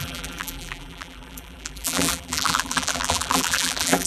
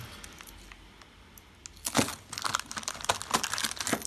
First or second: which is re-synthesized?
first